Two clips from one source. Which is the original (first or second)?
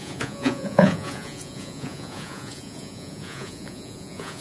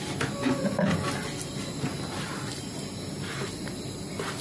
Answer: second